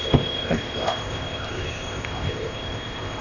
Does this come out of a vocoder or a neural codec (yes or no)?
yes